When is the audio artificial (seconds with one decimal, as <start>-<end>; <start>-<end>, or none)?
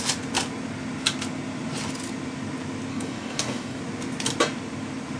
2.9-3.8